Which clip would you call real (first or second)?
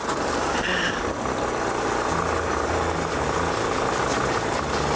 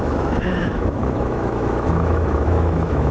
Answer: first